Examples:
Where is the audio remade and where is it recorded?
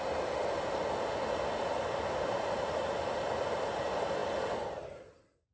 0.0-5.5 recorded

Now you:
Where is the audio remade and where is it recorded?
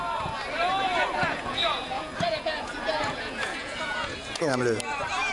0.0-1.2 recorded; 1.2-4.4 remade; 4.4-5.3 recorded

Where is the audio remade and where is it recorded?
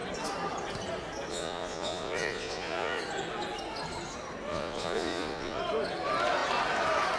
0.0-1.3 recorded; 1.3-3.0 remade; 3.0-4.5 recorded; 4.5-5.6 remade; 5.6-7.2 recorded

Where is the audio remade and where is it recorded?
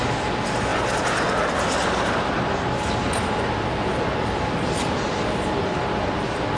0.0-6.6 recorded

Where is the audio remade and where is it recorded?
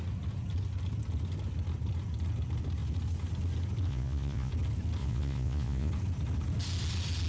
0.0-3.9 recorded; 3.9-4.5 remade; 4.5-5.0 recorded; 5.0-5.9 remade; 5.9-7.3 recorded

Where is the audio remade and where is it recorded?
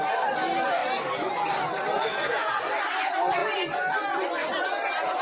0.0-2.1 recorded; 2.1-2.6 remade; 2.6-5.2 recorded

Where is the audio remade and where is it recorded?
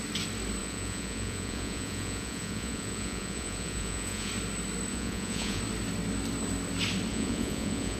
0.0-0.6 recorded; 0.6-4.3 remade; 4.3-4.9 recorded; 4.9-5.6 remade; 5.6-7.1 recorded; 7.1-8.0 remade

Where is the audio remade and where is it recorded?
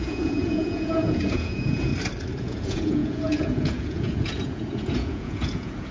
0.0-1.9 remade; 1.9-2.4 recorded; 2.4-5.9 remade